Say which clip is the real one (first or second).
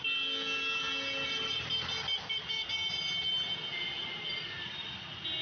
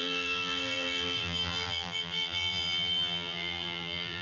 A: first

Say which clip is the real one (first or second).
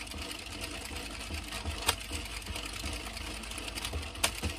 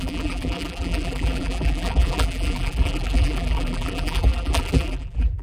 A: first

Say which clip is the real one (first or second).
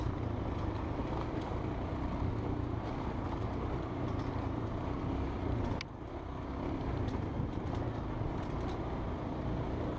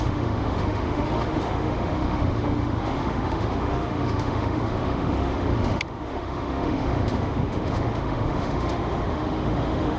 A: first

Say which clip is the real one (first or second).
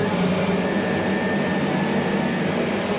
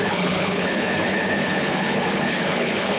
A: first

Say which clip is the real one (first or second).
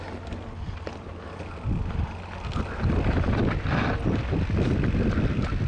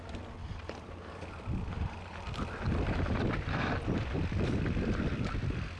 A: first